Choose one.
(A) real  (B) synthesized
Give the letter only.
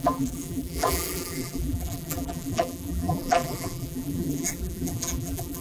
B